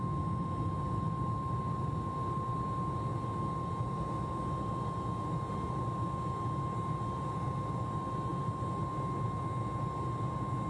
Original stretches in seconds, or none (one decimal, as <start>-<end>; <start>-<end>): 0.0-10.7